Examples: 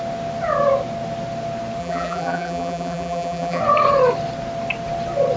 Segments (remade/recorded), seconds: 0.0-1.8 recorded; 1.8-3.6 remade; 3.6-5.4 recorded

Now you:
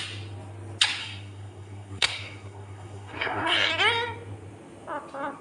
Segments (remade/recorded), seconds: 0.0-1.0 recorded; 1.0-3.7 remade; 3.7-5.4 recorded

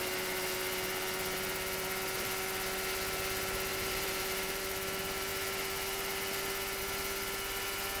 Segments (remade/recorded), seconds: 0.0-3.7 recorded; 3.7-4.6 remade; 4.6-8.0 recorded